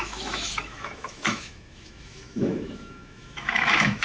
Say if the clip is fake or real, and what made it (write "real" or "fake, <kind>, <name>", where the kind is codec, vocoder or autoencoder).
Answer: fake, autoencoder, DAC-VAE